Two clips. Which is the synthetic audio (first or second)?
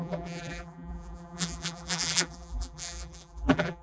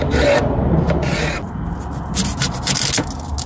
first